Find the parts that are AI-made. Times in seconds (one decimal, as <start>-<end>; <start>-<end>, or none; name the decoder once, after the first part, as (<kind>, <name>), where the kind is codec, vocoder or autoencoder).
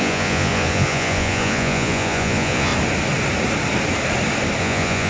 0.0-2.7 (vocoder, Vocos); 4.6-5.1